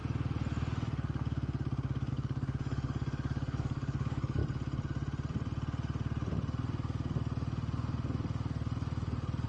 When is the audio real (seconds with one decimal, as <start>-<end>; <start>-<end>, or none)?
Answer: 0.0-2.1; 4.4-9.5